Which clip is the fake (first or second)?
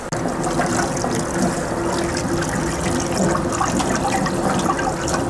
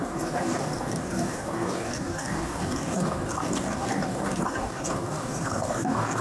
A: second